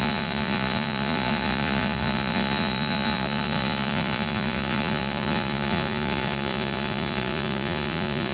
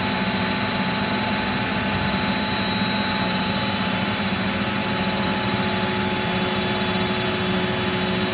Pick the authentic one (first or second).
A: second